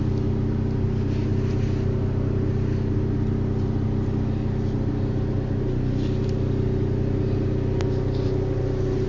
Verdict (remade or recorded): recorded